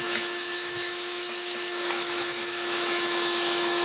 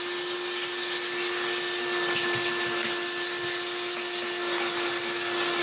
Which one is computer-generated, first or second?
first